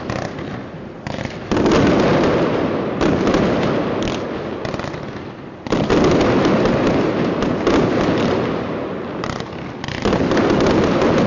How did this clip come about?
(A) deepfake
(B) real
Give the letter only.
B